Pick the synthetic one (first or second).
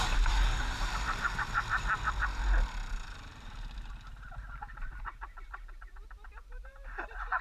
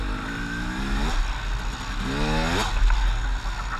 first